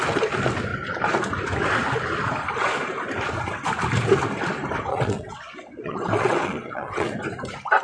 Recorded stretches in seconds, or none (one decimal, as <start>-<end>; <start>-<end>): 0.0-4.9; 7.2-7.8